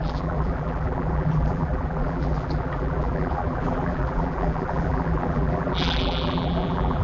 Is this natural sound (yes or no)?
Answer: no